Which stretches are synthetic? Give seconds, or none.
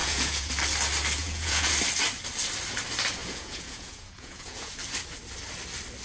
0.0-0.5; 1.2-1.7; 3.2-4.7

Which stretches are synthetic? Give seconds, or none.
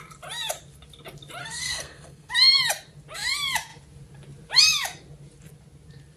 1.4-2.3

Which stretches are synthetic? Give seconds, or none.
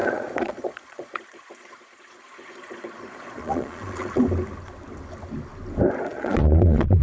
0.0-4.2; 6.1-7.0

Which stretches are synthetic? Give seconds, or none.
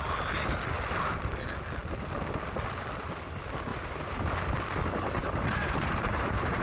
3.7-4.2; 5.2-6.6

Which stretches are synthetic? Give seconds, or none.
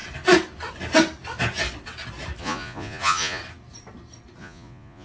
2.4-3.4; 4.4-5.0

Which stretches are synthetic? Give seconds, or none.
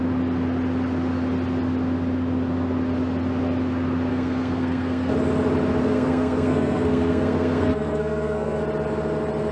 4.1-5.1; 5.8-8.6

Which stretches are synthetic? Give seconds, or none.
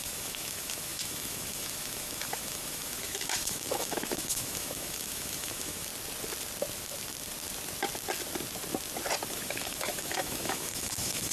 0.0-5.9; 9.3-11.3